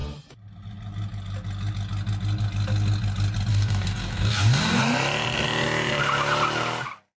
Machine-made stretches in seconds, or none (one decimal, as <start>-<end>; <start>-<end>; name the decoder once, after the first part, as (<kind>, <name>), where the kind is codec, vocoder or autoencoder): 3.5-4.8 (codec, DAC)

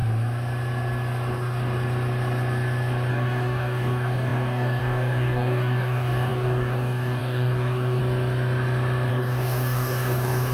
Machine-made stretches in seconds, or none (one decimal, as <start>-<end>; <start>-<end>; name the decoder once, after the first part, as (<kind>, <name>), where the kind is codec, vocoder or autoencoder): 3.1-8.0 (codec, DAC); 9.1-10.5

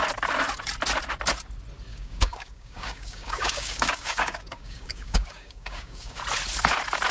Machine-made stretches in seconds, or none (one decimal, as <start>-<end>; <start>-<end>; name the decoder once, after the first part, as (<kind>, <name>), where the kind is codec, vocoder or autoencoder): 1.9-6.2 (codec, DAC)